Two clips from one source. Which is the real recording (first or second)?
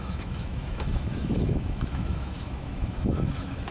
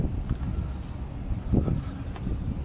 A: second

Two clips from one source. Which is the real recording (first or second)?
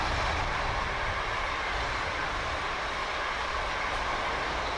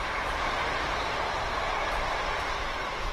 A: first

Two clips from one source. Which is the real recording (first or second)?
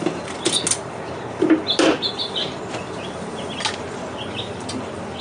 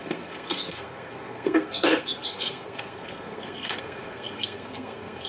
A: first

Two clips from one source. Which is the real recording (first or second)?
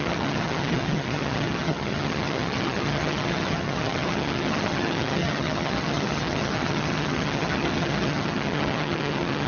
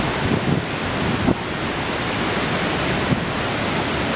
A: second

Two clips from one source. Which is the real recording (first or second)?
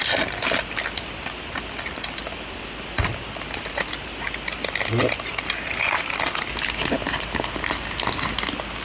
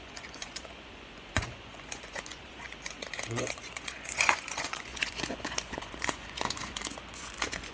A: first